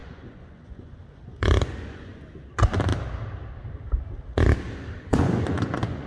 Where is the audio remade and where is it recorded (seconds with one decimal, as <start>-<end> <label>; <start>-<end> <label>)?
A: 0.0-2.4 remade; 2.4-5.1 recorded; 5.1-6.1 remade